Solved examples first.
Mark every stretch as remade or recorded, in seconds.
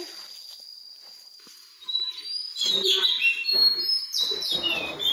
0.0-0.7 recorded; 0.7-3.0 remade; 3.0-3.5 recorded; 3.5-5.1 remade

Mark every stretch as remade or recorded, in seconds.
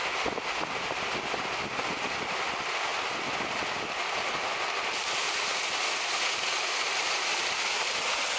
0.0-8.4 recorded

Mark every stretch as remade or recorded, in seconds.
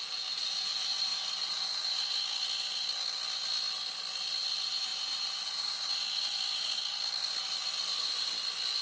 0.0-8.8 recorded